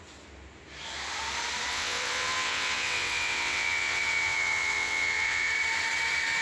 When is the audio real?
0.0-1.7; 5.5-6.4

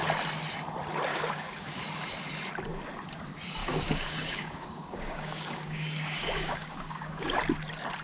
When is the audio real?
0.0-1.1; 1.8-3.6; 7.4-8.0

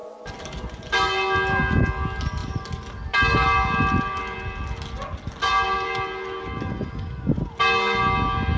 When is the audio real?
0.0-8.6

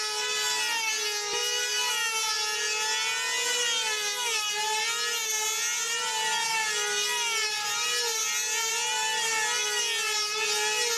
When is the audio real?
0.0-11.0

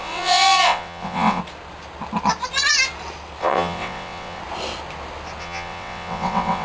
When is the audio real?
1.4-3.4; 4.4-5.4

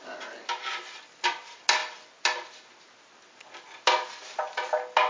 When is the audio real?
0.0-5.1

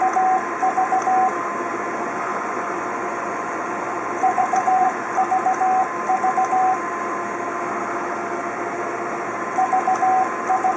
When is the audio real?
0.0-1.7; 5.2-10.8